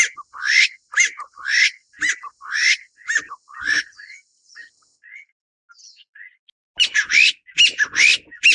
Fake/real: real